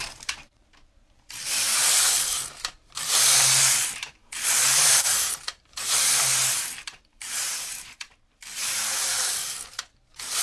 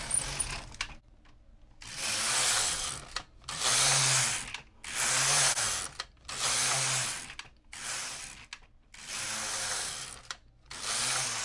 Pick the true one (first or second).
second